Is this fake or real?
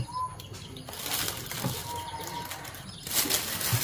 real